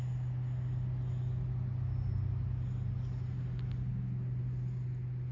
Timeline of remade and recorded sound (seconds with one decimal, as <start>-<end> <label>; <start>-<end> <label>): 0.0-5.3 recorded